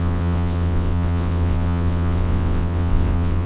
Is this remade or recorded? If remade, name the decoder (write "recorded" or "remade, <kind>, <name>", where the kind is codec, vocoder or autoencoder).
remade, vocoder, WaveNeXt